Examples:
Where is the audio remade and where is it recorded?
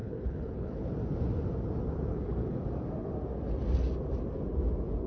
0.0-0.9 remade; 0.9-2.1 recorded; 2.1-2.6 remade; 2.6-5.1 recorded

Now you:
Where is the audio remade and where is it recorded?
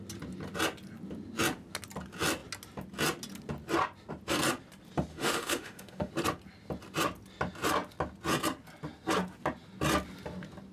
0.0-5.1 recorded; 5.1-6.1 remade; 6.1-10.7 recorded